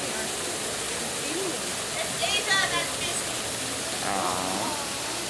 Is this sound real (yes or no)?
yes